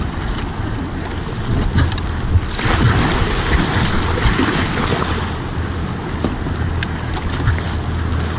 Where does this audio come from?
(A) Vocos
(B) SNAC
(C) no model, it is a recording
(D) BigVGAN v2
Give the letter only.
C